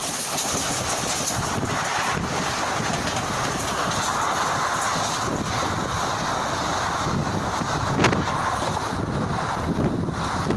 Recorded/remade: recorded